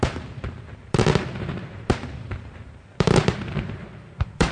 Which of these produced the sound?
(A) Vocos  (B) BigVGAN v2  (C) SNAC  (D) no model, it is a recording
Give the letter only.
B